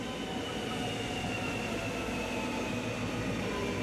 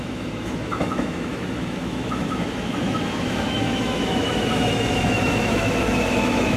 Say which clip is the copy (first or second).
second